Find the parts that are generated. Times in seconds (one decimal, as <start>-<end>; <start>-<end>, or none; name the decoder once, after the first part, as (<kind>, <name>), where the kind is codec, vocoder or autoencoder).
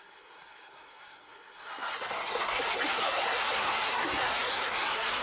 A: 0.0-5.2 (codec, SNAC)